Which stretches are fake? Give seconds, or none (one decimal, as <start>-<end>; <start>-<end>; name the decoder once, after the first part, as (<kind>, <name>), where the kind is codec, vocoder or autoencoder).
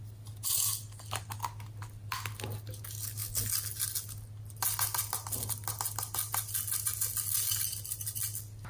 none